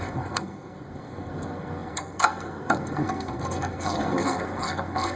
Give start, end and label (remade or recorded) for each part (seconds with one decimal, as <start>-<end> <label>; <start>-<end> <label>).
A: 0.0-5.2 remade